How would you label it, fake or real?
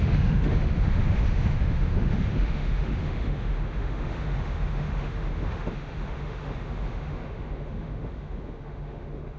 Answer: fake